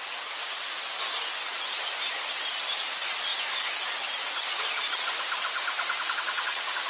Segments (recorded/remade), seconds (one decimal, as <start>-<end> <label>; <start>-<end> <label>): 0.0-6.9 recorded